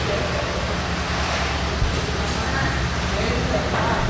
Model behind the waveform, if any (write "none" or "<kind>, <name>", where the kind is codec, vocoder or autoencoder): none